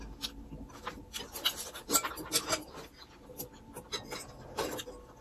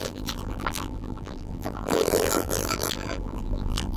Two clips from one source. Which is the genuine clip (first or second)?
first